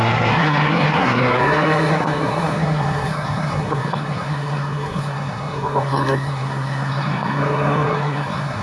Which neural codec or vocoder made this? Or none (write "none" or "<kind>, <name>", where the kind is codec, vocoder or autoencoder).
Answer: codec, SNAC